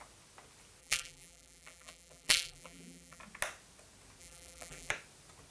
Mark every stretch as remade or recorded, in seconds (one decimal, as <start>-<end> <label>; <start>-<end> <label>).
0.0-0.8 recorded; 0.8-3.2 remade; 3.2-4.2 recorded; 4.2-4.9 remade; 4.9-5.5 recorded